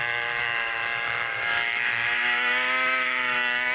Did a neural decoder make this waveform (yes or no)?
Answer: yes